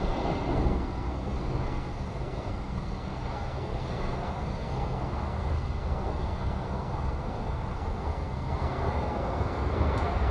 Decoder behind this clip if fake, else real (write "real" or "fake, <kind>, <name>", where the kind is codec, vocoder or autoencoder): fake, codec, SNAC